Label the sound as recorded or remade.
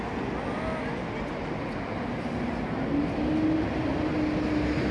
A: recorded